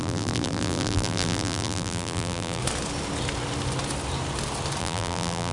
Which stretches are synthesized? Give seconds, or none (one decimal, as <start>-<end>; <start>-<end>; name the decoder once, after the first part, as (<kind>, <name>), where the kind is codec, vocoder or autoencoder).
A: 0.0-2.6 (vocoder, BigVGAN v2); 4.8-5.5